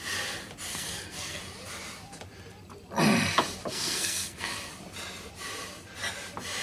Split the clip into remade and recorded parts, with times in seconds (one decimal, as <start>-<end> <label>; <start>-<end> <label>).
0.0-0.7 recorded; 0.7-1.4 remade; 1.4-3.7 recorded; 3.7-4.7 remade; 4.7-6.6 recorded